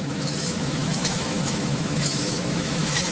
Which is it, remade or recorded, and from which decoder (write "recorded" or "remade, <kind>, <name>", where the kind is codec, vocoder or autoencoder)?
remade, autoencoder, DAC-VAE